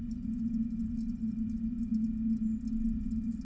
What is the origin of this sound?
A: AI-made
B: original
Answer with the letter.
B